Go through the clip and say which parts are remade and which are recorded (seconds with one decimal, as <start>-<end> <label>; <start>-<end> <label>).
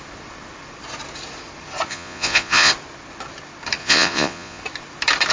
0.0-1.9 recorded; 1.9-2.7 remade; 2.7-3.8 recorded; 3.8-4.6 remade; 4.6-5.3 recorded